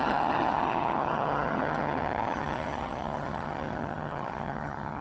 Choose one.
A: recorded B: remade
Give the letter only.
B